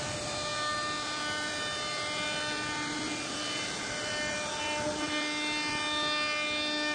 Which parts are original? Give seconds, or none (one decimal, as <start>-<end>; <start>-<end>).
0.0-6.9